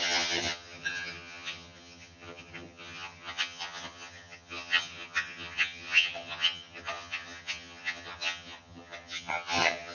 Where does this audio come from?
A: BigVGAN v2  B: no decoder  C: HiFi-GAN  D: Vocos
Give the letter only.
C